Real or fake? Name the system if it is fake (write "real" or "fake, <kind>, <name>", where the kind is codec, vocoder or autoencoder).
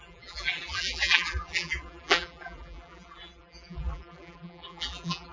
fake, vocoder, BigVGAN v2